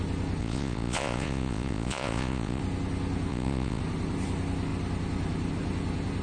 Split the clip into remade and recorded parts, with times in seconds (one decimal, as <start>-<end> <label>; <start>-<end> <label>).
0.0-0.4 recorded; 0.4-2.6 remade; 2.6-3.3 recorded; 3.3-3.8 remade; 3.8-6.2 recorded